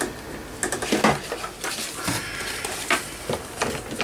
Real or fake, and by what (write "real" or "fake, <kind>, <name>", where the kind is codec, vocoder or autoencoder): real